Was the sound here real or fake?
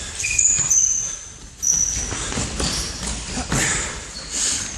real